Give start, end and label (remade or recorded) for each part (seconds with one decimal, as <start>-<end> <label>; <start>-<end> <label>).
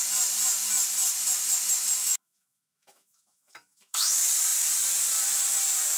0.0-2.0 recorded; 2.0-4.1 remade; 4.1-6.0 recorded